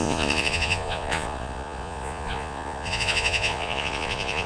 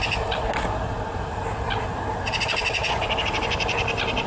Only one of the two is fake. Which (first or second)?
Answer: first